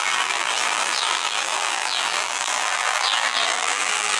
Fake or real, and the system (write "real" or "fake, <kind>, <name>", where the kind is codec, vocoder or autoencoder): fake, vocoder, BigVGAN v2